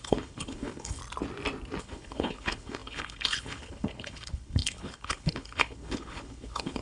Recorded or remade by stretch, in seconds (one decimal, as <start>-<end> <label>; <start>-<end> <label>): 0.0-1.0 remade; 1.0-1.8 recorded; 1.8-6.8 remade